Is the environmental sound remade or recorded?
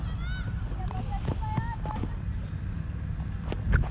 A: recorded